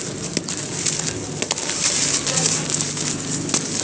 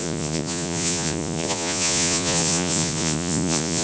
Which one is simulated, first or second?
second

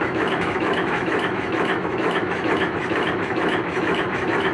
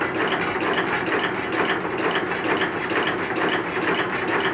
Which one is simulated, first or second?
first